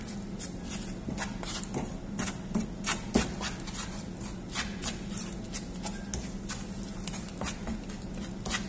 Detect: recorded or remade recorded